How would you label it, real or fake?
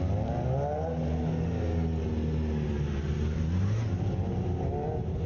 real